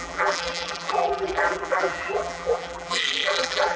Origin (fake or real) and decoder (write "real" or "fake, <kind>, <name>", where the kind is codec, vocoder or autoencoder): fake, vocoder, BigVGAN v2